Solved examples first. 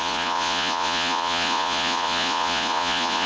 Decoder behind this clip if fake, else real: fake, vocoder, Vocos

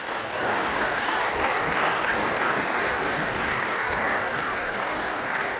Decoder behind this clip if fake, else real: fake, codec, DAC